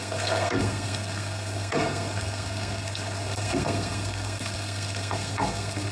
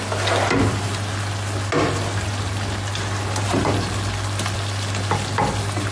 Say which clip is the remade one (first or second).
first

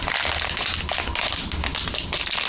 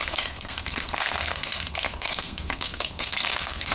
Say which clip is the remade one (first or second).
second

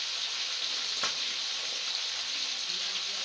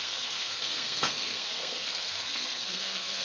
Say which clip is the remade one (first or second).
second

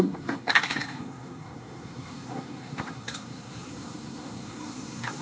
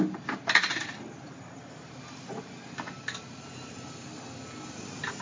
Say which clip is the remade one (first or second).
first